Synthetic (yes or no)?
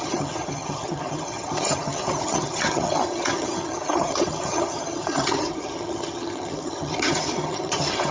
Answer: yes